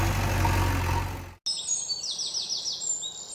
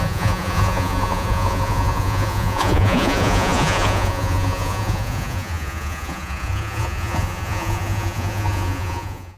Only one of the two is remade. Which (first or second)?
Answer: second